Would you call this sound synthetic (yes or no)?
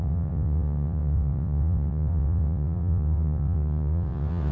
yes